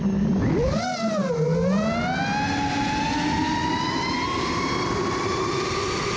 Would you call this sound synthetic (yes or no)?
no